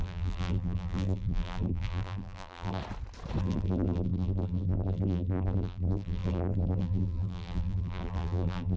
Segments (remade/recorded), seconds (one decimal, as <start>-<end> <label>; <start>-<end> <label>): 0.0-2.8 remade; 2.8-3.4 recorded; 3.4-8.8 remade